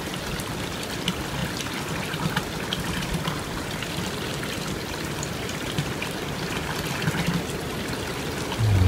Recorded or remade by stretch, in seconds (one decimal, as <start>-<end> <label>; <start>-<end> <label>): 0.0-8.9 recorded